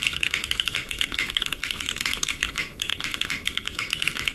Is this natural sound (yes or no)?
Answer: no